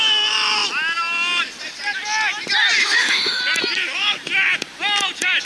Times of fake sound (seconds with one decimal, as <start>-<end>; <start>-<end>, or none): 2.8-3.4